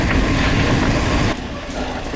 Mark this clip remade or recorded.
recorded